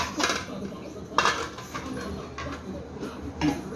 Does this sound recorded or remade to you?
recorded